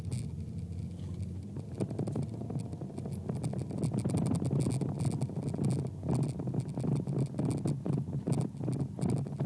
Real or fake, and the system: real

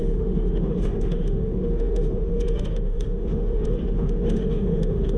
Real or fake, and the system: fake, autoencoder, DAC-VAE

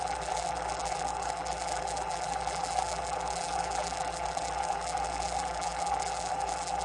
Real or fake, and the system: fake, vocoder, BigVGAN v2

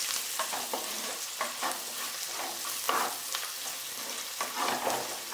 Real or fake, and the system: real